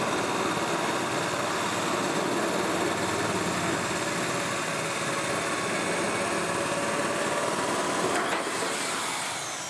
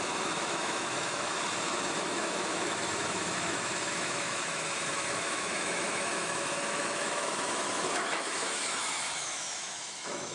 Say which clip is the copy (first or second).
second